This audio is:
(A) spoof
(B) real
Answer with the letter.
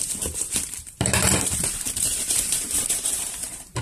A